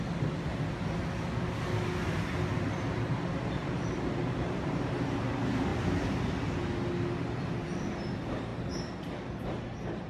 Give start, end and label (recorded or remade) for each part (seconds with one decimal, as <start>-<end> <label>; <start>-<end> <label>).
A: 0.0-3.6 recorded; 3.6-5.3 remade; 5.3-10.1 recorded